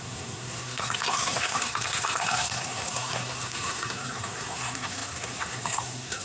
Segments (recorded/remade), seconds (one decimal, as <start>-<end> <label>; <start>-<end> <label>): 0.0-6.2 remade